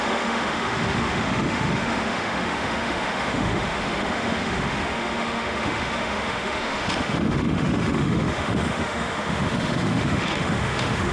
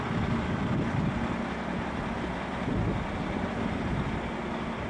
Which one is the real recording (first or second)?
second